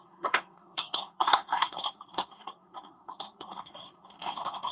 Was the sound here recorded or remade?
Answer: remade